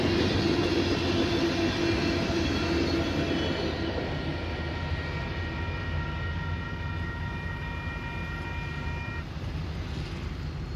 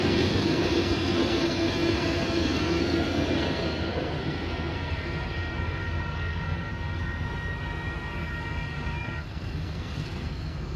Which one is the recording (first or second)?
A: first